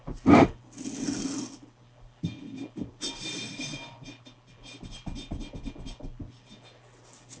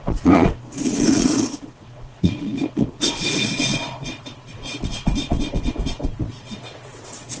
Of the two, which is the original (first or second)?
first